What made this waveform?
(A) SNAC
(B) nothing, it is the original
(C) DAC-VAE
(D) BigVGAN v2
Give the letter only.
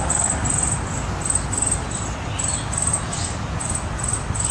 B